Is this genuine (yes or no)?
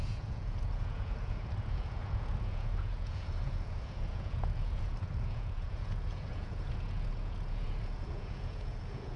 no